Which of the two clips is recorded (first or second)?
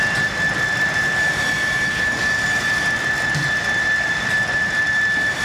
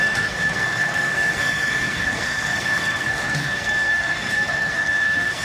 first